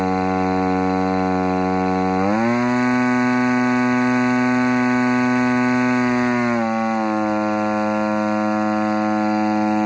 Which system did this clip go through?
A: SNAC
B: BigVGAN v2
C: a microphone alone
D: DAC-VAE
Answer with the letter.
C